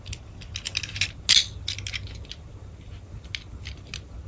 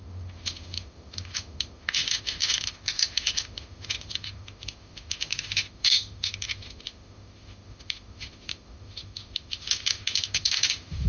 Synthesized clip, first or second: second